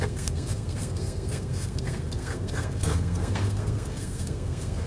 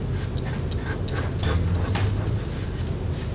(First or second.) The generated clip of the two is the first